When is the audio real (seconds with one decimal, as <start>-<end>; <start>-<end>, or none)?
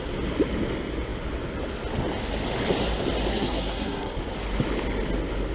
0.0-3.3; 4.2-5.5